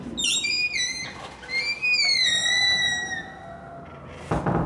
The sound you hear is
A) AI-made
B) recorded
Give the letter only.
B